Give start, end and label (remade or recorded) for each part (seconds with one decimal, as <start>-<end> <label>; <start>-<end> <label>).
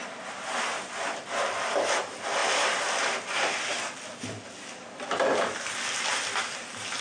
0.0-7.0 recorded